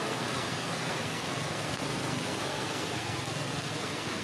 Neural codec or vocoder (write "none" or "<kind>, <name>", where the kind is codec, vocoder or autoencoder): codec, SNAC